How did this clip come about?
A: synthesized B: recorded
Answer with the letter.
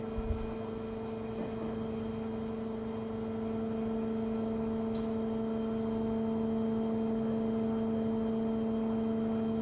B